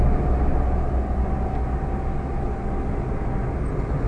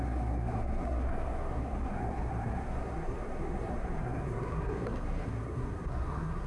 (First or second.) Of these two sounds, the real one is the first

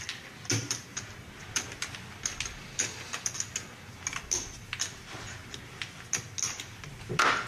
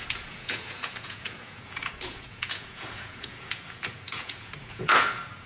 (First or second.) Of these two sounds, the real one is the first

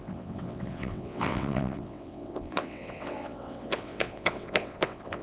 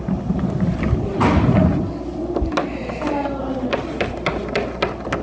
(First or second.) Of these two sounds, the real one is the second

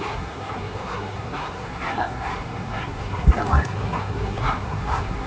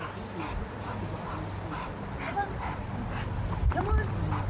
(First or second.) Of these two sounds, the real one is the second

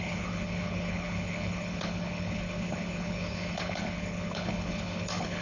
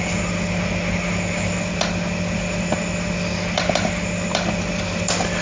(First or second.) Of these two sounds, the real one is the second